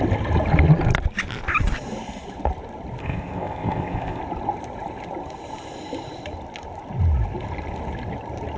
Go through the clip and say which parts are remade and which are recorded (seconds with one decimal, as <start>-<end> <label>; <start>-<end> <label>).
0.0-3.0 recorded; 3.0-4.2 remade; 4.2-8.6 recorded